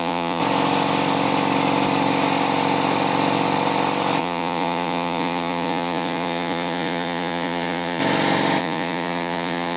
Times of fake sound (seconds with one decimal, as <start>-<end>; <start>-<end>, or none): 0.0-0.4; 4.2-8.0; 8.6-9.8